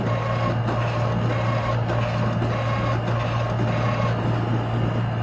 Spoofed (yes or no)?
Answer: no